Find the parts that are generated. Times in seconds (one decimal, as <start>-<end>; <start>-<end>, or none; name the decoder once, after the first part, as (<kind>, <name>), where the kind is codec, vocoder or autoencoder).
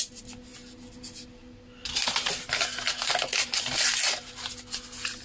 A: none